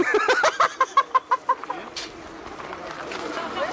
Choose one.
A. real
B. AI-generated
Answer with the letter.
A